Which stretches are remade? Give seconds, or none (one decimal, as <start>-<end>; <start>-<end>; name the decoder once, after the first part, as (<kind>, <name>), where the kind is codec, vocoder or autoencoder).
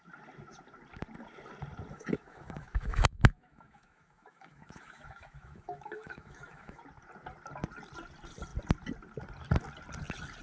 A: 1.9-6.8 (autoencoder, DAC-VAE)